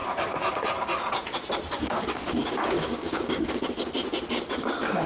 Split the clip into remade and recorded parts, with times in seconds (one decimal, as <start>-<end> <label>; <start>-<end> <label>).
0.0-1.7 recorded; 1.7-3.8 remade; 3.8-5.1 recorded